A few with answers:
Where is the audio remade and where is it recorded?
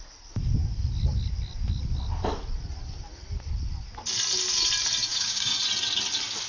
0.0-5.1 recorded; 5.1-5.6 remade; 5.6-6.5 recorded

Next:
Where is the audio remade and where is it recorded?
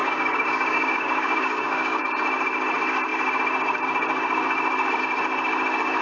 0.0-2.0 remade; 2.0-6.0 recorded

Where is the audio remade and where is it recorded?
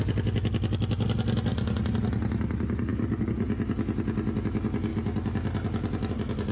0.0-6.5 recorded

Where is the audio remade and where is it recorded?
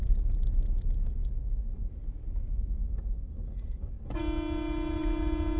0.0-1.2 recorded; 1.2-1.9 remade; 1.9-2.8 recorded; 2.8-4.2 remade; 4.2-5.6 recorded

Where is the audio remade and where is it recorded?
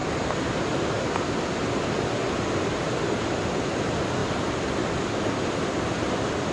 0.0-6.5 recorded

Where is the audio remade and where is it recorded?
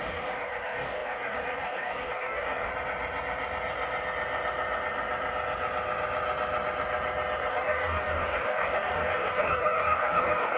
0.0-2.7 remade; 2.7-7.5 recorded; 7.5-10.6 remade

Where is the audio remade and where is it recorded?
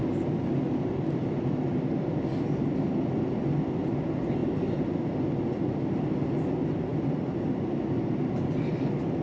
0.0-9.2 recorded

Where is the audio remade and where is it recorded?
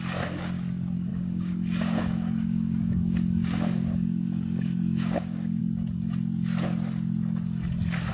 0.0-1.1 recorded; 1.1-5.6 remade; 5.6-8.1 recorded